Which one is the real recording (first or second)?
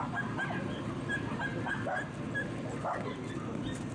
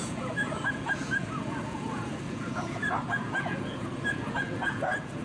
first